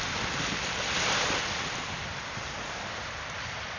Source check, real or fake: real